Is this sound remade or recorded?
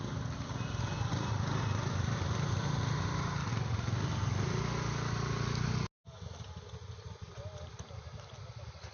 recorded